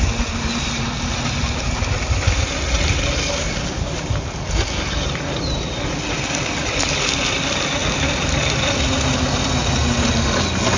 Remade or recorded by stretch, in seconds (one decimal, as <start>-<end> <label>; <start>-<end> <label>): 0.0-10.8 recorded